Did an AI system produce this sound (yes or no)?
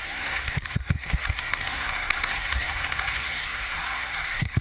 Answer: yes